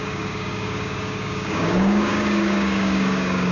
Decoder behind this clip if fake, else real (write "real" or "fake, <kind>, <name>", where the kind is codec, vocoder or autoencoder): fake, codec, DAC